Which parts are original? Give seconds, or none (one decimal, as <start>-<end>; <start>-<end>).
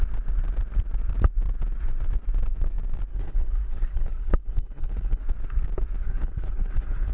0.0-3.1; 5.2-6.0